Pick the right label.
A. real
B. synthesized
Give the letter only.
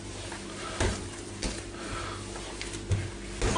A